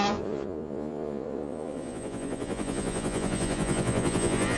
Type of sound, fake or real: fake